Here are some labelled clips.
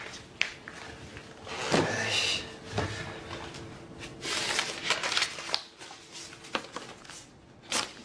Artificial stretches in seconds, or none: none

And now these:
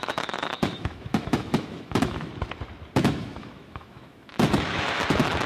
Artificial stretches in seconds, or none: 0.0-2.3 (autoencoder, DAC-VAE); 3.0-5.5